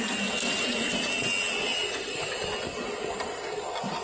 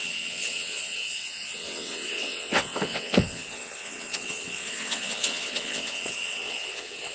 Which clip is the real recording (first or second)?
first